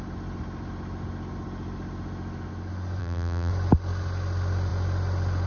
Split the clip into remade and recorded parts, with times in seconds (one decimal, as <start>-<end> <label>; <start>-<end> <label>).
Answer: 0.0-3.0 recorded; 3.0-3.5 remade; 3.5-5.5 recorded

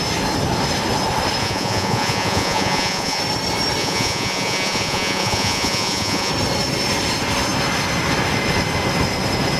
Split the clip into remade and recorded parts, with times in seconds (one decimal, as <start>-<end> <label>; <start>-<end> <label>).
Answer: 0.0-1.4 recorded; 1.4-3.2 remade; 3.2-3.8 recorded; 3.8-6.3 remade; 6.3-9.6 recorded